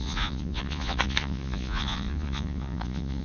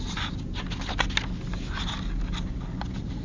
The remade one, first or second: first